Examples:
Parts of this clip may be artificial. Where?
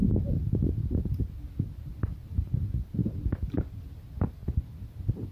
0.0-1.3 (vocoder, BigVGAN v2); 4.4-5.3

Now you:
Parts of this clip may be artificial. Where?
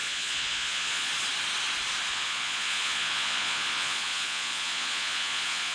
0.0-1.1 (vocoder, Vocos); 2.1-5.7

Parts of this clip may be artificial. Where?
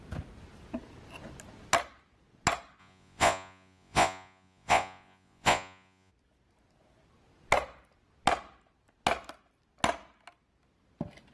2.8-6.1 (vocoder, Vocos)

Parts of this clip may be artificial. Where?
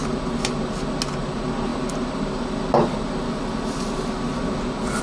none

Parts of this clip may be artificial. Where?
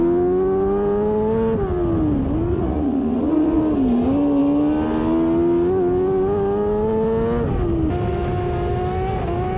2.5-3.6 (vocoder, Vocos)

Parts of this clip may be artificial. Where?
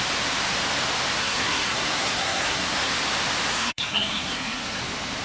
1.2-2.9 (codec, SNAC); 3.5-4.8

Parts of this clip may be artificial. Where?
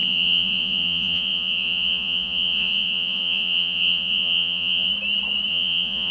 0.0-4.9 (vocoder, Vocos); 5.5-6.1